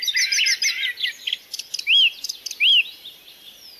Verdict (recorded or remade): recorded